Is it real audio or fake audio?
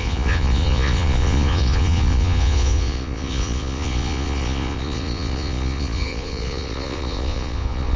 fake